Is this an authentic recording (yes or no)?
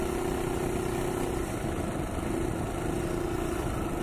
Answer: yes